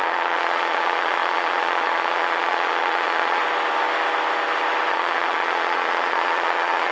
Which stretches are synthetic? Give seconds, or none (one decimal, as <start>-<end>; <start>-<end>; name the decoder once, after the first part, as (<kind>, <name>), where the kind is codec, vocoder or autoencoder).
0.0-3.4 (vocoder, Vocos); 4.9-6.9